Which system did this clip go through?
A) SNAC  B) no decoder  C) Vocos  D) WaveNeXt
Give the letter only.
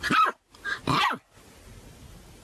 B